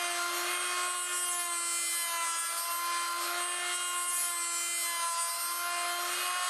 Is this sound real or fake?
real